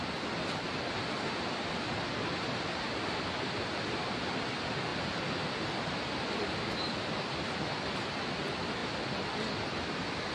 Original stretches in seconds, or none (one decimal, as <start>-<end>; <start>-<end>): 0.0-10.3